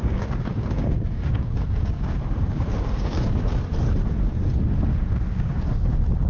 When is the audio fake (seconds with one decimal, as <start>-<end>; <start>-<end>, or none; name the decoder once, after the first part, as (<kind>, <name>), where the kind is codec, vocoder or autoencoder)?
0.0-3.6 (codec, DAC); 4.9-5.6